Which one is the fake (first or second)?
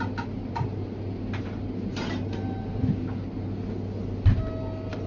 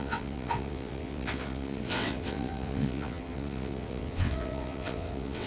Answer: second